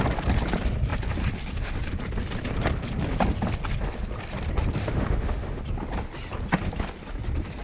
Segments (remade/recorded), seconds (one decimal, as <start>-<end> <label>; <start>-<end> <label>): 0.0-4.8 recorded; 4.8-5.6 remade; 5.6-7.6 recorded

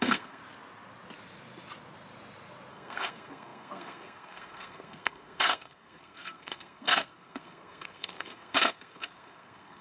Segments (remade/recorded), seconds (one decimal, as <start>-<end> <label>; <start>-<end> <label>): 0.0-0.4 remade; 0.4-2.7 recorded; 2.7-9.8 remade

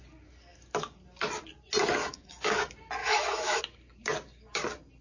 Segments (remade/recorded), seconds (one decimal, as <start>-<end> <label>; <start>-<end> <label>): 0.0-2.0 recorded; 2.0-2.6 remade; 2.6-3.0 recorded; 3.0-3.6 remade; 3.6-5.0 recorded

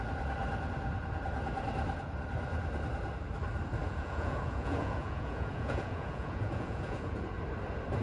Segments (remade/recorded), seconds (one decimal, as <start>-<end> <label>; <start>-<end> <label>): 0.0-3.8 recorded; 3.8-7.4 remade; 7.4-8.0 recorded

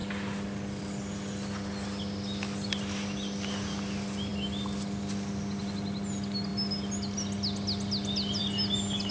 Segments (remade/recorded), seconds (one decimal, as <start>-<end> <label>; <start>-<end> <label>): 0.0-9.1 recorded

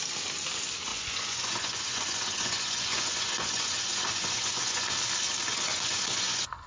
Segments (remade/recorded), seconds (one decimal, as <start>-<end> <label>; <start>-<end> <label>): 0.0-0.9 recorded; 0.9-4.9 remade; 4.9-5.5 recorded; 5.5-6.7 remade